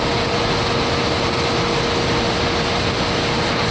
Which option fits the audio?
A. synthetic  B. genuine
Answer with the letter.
B